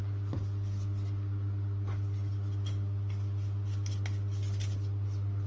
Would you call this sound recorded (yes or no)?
yes